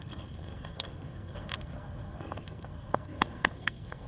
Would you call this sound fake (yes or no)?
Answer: yes